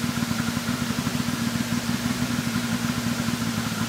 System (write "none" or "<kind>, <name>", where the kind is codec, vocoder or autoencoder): none